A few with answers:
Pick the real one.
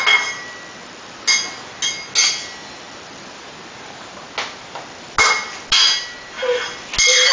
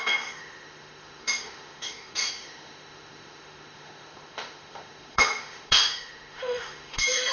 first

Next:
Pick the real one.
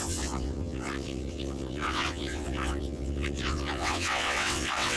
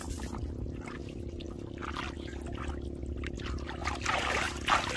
second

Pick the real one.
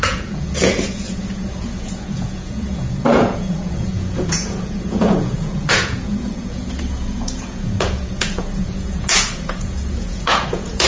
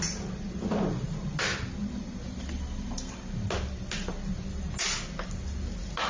second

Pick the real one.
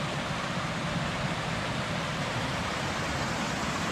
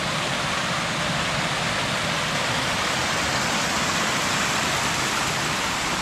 second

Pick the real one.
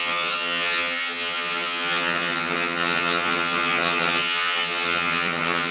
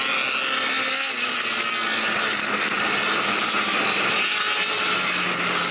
second